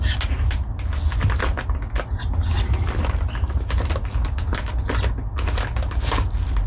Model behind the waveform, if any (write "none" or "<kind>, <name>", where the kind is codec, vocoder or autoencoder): none